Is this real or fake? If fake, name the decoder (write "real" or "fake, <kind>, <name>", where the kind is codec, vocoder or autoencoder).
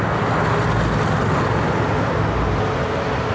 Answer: real